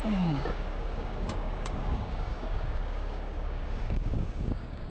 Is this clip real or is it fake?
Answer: fake